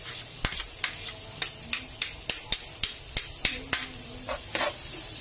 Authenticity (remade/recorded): recorded